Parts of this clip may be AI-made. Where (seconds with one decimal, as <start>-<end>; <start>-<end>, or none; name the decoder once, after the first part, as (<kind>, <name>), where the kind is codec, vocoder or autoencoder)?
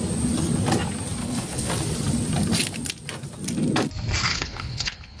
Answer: 1.2-1.7 (codec, HILCodec); 4.3-5.2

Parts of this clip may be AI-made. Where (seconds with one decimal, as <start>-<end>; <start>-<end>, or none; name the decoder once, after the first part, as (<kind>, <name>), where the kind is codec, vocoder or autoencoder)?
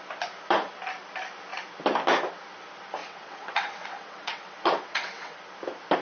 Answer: 3.0-5.4 (vocoder, WaveNeXt)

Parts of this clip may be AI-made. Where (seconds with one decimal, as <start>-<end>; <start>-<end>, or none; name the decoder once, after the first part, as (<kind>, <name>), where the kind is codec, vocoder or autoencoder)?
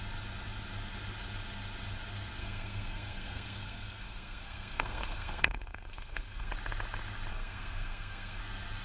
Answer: 2.4-6.5 (codec, SNAC); 7.3-8.4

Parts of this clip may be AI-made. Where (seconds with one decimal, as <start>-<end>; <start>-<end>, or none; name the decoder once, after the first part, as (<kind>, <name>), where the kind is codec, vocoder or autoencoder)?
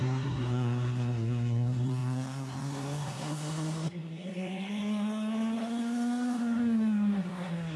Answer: 0.0-7.8 (codec, SNAC)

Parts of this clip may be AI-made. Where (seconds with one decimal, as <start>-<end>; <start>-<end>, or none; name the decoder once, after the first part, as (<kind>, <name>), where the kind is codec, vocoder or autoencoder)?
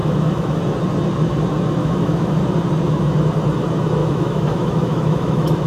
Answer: 0.0-0.6 (autoencoder, DAC-VAE); 1.8-2.4; 4.0-5.7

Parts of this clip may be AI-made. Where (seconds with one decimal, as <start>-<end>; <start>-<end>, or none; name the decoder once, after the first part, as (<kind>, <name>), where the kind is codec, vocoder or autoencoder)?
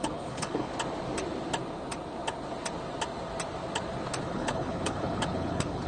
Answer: 0.0-0.7 (codec, HILCodec); 4.2-5.9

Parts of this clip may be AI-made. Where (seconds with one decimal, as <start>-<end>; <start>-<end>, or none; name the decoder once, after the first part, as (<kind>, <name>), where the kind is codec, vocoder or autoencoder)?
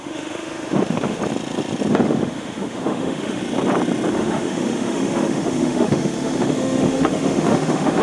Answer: 0.0-1.2 (autoencoder, DAC-VAE); 1.9-3.4; 4.1-8.0